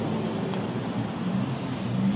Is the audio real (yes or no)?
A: yes